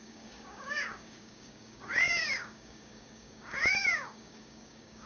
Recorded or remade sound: remade